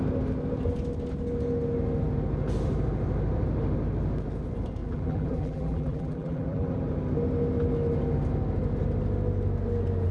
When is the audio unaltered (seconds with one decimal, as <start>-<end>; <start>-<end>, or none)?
0.0-4.8; 6.8-10.1

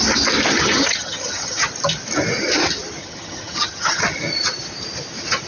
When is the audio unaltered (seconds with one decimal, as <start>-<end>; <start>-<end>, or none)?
0.0-0.5; 1.6-3.0; 4.0-5.5

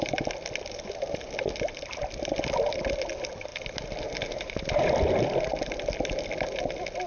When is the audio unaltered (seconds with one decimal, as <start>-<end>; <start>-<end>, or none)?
0.0-7.1

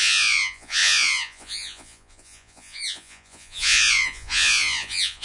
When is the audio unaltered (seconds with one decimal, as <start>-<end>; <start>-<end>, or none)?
none

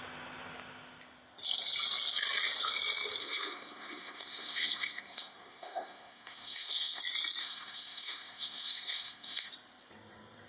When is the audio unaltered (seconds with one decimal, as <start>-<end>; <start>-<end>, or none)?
0.0-3.2; 7.0-7.4; 9.5-10.5

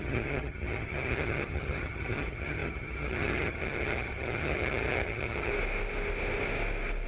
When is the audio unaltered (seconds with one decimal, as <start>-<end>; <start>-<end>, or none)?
5.5-7.1

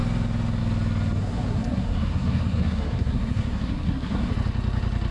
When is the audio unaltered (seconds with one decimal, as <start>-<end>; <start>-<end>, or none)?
0.0-1.2; 4.3-5.1